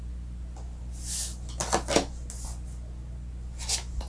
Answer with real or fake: real